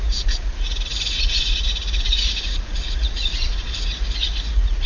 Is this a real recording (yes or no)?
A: no